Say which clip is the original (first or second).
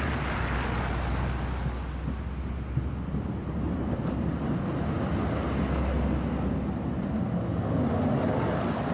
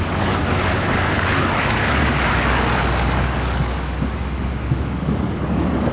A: first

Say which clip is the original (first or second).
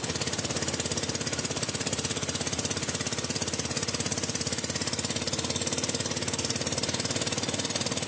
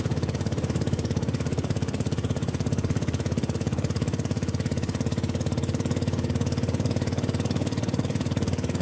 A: first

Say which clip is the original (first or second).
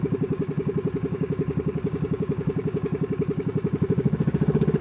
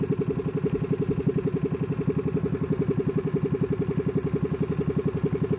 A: second